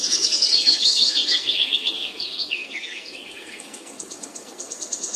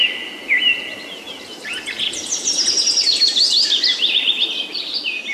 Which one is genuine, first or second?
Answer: second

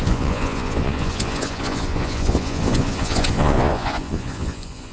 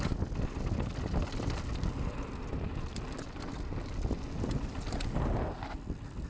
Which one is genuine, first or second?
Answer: second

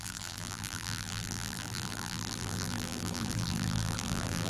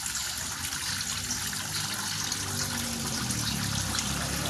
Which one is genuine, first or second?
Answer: second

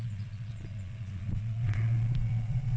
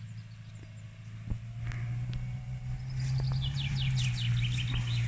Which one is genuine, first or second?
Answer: second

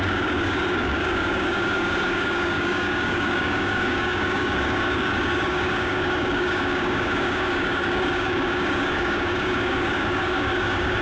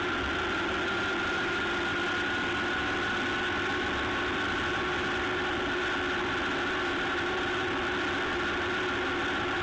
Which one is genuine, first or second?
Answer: second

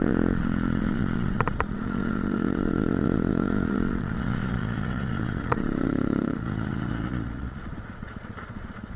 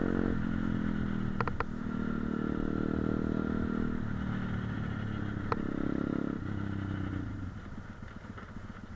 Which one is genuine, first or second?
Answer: second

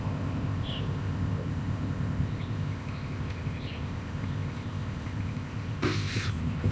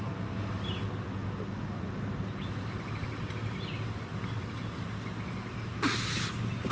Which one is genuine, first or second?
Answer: second